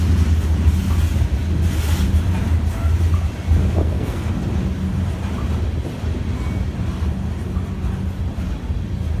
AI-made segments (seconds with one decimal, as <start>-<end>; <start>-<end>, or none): 3.6-4.3